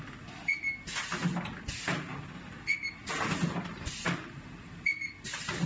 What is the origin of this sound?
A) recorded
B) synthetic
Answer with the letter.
A